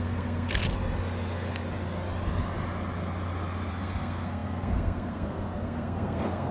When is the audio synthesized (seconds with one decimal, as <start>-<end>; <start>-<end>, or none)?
0.0-0.6; 3.7-6.5

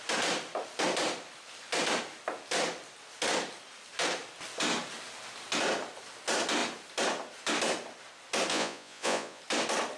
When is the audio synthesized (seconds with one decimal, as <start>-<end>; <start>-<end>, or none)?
8.5-9.4

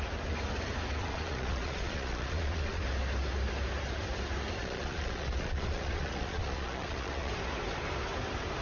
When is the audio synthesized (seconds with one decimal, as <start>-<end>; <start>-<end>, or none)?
1.0-2.8; 4.6-7.3